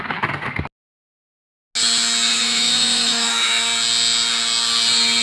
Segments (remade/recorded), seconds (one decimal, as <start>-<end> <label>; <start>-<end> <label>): 0.0-2.3 recorded; 2.3-3.5 remade; 3.5-5.2 recorded